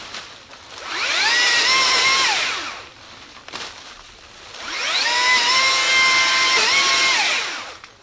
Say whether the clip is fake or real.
real